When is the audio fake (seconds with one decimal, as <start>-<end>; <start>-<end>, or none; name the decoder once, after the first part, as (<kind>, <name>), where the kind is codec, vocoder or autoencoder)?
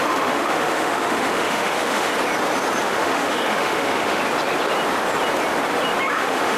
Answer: 0.0-2.1 (autoencoder, DAC-VAE); 2.8-4.2; 6.1-6.6